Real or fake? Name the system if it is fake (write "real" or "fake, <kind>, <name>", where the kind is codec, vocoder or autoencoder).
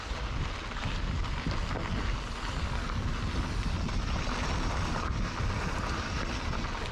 real